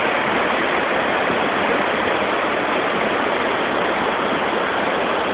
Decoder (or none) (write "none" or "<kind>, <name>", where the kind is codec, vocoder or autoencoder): none